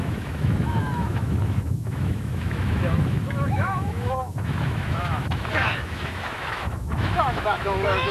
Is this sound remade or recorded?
remade